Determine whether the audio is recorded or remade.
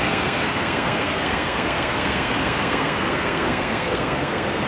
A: remade